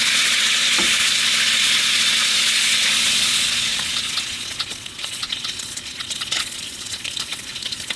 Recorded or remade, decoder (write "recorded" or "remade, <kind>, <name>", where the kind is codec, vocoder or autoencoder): remade, vocoder, Vocos